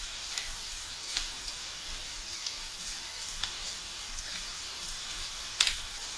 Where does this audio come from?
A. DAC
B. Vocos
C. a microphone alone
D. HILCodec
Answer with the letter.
A